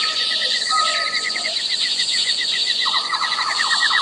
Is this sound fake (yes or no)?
yes